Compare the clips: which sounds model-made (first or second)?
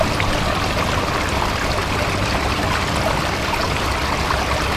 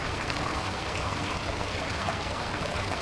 second